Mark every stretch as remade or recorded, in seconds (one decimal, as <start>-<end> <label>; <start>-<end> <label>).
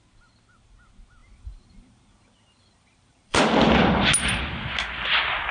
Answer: 0.0-1.2 recorded; 1.2-3.4 remade; 3.4-5.5 recorded